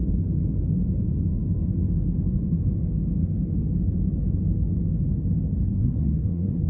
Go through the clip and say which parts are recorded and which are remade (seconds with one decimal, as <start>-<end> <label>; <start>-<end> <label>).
0.0-5.6 recorded; 5.6-6.7 remade